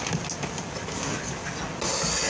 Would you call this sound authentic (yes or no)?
yes